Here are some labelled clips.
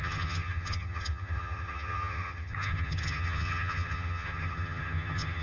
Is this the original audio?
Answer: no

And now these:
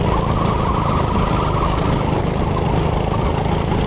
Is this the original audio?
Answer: yes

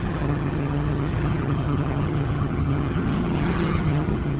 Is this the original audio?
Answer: no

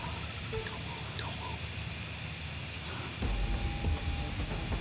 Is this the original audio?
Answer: yes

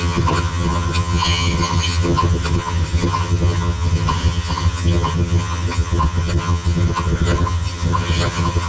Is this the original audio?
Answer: no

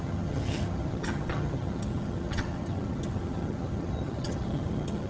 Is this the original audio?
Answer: no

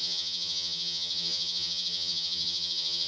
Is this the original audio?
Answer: no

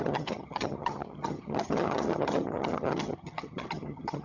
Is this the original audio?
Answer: no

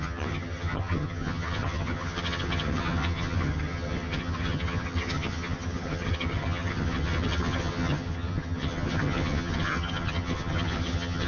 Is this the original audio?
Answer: no